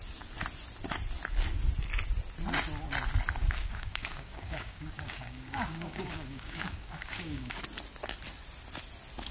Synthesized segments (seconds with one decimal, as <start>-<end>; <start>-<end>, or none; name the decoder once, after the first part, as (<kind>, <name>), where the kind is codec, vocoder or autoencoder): 3.4-7.6 (codec, DAC)

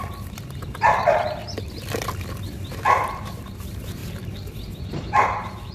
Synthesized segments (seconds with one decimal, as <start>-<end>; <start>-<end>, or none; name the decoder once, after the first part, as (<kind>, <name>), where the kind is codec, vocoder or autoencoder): 0.0-1.4 (vocoder, BigVGAN v2); 3.1-4.0; 5.0-5.7